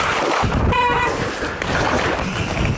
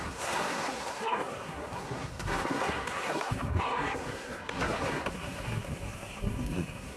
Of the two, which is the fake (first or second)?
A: second